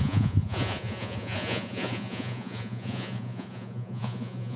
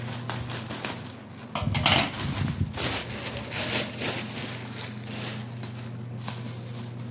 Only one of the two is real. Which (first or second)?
second